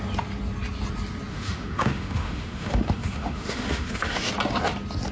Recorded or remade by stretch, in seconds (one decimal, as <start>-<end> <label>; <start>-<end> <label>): 0.0-1.3 recorded; 1.3-4.3 remade; 4.3-5.1 recorded